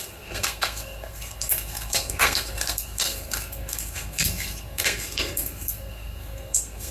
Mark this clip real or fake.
fake